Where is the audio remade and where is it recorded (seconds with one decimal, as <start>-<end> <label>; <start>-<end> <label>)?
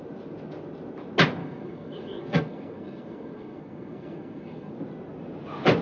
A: 0.0-1.4 recorded; 1.4-4.7 remade; 4.7-5.8 recorded